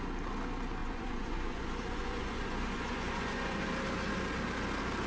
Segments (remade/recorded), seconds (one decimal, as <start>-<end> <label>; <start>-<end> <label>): 0.0-0.8 recorded; 0.8-3.7 remade; 3.7-5.1 recorded